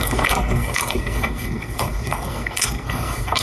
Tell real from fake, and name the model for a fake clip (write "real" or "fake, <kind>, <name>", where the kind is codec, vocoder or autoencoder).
fake, codec, SNAC